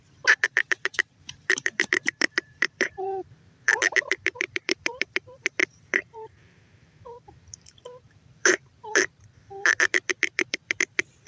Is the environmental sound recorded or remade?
remade